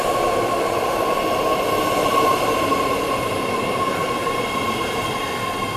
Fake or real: fake